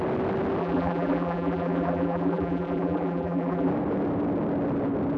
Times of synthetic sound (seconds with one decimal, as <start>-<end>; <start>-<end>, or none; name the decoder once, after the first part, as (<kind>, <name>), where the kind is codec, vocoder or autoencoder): 0.6-3.7 (vocoder, BigVGAN v2)